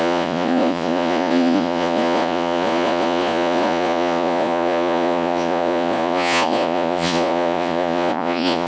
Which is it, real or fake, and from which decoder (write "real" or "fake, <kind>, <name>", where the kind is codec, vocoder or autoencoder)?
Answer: fake, vocoder, Vocos